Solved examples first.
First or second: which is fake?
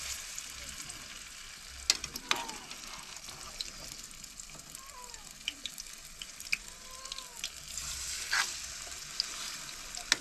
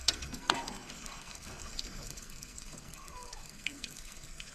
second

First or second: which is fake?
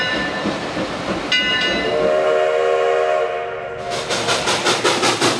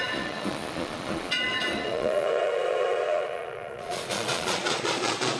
second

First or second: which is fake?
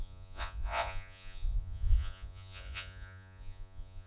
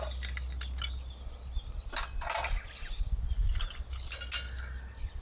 first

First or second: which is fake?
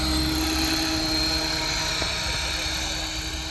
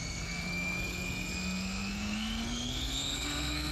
second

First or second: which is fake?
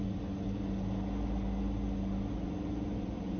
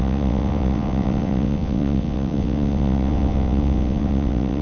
second